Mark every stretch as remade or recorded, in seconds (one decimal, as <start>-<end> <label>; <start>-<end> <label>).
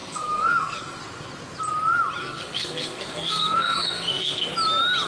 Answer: 0.0-1.0 remade; 1.0-2.2 recorded; 2.2-4.5 remade; 4.5-5.1 recorded